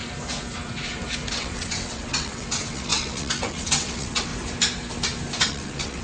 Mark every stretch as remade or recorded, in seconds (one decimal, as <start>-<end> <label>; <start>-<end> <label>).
0.0-1.3 recorded; 1.3-4.3 remade; 4.3-5.4 recorded; 5.4-6.0 remade